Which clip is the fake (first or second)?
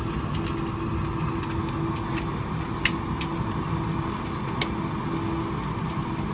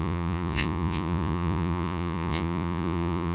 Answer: second